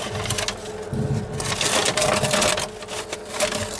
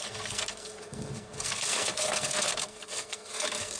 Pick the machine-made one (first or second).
second